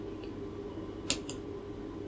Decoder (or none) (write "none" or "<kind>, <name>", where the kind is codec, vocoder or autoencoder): none